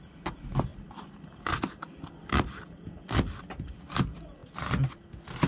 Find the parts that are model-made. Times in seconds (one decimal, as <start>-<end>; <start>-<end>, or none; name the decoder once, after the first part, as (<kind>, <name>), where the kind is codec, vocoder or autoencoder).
0.7-4.0 (vocoder, BigVGAN v2)